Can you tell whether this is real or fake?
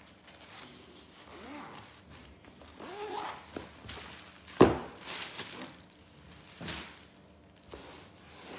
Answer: real